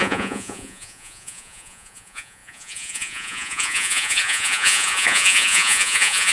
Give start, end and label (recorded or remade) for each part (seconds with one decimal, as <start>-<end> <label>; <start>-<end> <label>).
0.0-6.3 remade